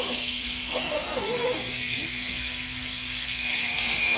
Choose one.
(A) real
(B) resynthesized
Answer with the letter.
B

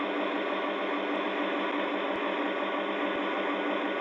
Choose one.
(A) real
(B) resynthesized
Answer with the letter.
A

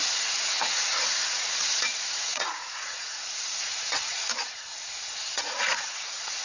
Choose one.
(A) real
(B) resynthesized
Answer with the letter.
B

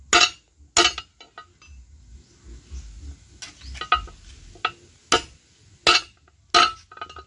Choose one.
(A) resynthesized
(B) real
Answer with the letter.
B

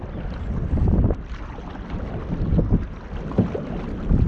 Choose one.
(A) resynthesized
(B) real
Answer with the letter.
B